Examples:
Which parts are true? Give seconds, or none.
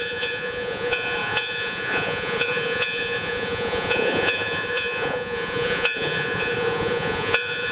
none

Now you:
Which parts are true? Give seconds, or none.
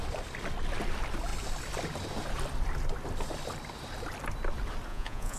0.0-4.9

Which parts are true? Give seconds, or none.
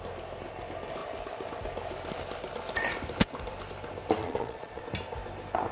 0.0-4.2; 4.8-5.7